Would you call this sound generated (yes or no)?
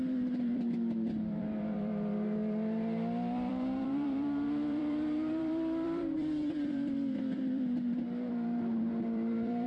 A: yes